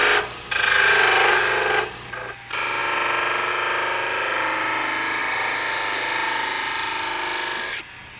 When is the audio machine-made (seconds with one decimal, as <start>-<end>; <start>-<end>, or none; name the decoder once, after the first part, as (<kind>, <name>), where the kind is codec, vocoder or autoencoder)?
none